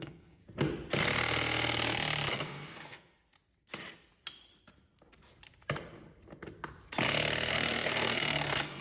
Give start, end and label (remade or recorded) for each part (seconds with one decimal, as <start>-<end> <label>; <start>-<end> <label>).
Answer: 0.0-0.4 remade; 0.4-2.3 recorded; 2.3-3.3 remade; 3.3-7.5 recorded; 7.5-8.8 remade